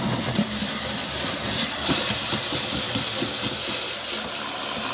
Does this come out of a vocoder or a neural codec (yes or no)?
no